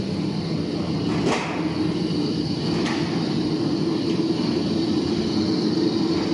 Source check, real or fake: real